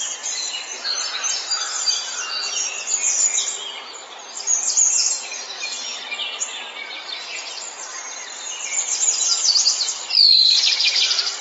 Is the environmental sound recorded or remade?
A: recorded